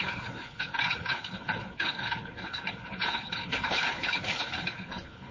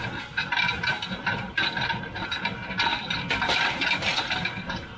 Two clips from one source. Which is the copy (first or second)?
first